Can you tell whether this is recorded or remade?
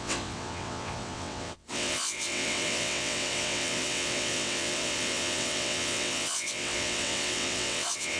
remade